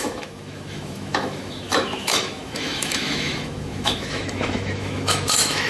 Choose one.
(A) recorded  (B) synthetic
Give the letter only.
B